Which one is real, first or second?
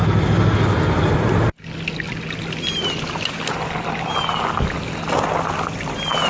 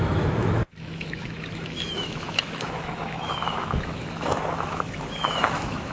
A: first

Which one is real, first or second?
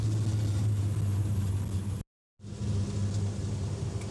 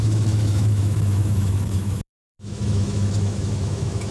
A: first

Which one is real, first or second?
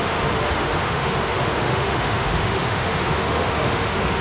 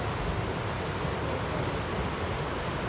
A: second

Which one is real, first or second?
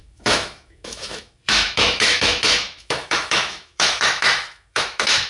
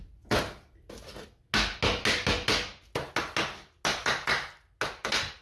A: second